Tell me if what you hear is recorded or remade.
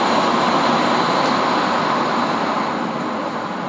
recorded